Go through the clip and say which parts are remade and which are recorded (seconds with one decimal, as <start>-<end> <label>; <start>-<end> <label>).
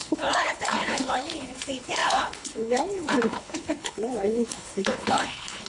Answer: 0.0-5.7 remade